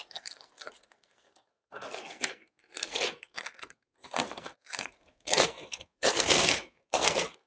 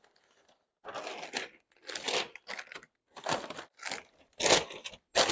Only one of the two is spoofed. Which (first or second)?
first